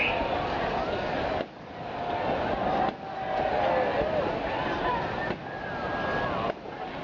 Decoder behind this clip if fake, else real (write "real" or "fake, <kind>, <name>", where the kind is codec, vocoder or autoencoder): real